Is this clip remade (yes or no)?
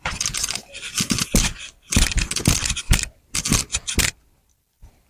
no